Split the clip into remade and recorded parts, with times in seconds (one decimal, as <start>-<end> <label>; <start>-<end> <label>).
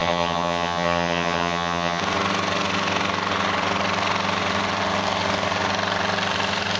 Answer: 0.0-2.0 remade; 2.0-6.8 recorded